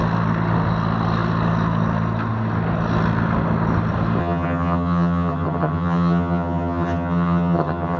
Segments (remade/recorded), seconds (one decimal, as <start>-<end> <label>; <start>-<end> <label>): 0.0-4.2 recorded; 4.2-8.0 remade